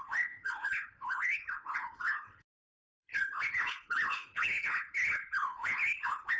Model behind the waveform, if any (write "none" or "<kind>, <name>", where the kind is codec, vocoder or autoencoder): codec, HILCodec